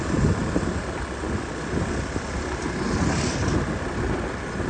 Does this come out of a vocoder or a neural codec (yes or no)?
no